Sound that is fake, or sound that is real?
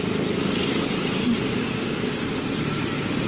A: real